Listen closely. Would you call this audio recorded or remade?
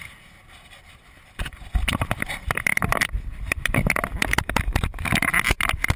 recorded